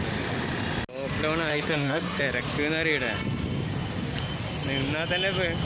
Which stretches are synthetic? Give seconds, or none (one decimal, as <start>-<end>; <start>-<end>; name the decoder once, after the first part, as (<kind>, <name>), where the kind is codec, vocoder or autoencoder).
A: 1.5-2.2 (codec, SNAC)